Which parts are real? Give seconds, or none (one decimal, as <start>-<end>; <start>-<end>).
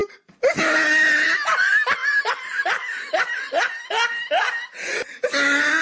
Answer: 0.0-2.0; 3.7-5.8